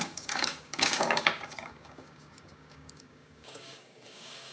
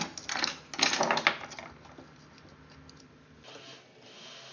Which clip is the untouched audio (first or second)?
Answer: second